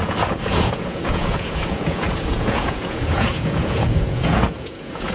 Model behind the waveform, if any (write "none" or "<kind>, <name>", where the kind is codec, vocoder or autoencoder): vocoder, Vocos